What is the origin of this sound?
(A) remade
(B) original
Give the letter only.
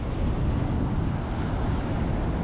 B